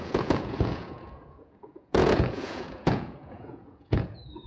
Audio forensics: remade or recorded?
remade